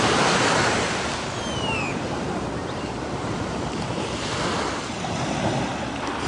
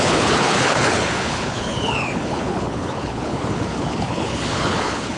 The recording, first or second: first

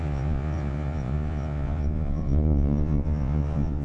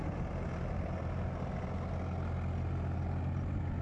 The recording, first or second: second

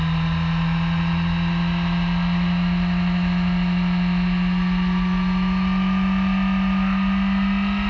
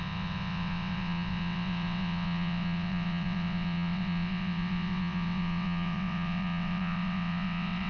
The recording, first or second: first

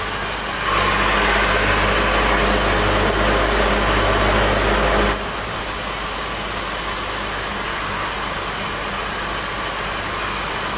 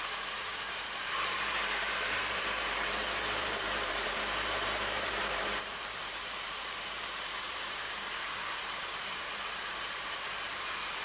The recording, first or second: first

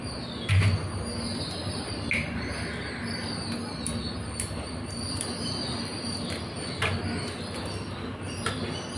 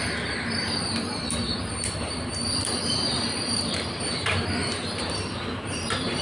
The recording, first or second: first